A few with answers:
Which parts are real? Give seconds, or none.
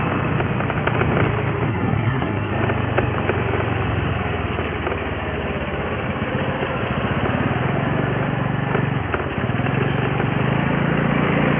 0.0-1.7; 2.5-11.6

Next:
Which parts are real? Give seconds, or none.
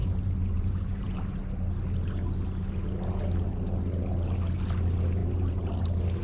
1.3-5.2; 5.7-6.2